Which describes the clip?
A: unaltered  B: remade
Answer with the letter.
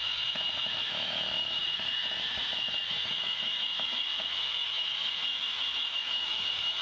B